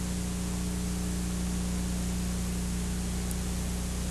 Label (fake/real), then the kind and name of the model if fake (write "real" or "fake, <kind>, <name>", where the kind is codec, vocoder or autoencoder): real